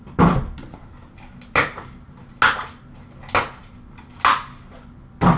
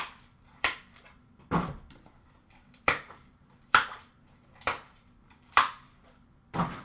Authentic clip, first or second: first